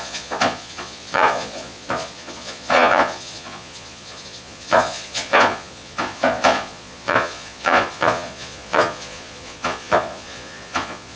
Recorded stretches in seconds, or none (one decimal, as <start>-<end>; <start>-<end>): none